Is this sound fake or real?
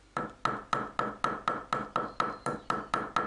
real